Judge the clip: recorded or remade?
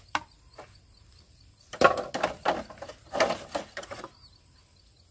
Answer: recorded